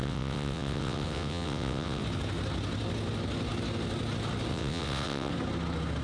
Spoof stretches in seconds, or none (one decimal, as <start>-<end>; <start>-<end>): 0.0-2.0; 4.5-5.3